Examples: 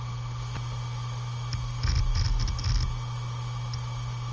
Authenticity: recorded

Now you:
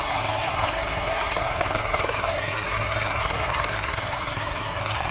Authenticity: remade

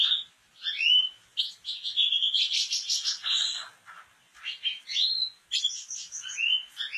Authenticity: recorded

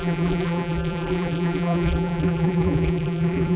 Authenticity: remade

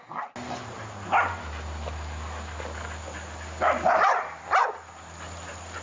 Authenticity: recorded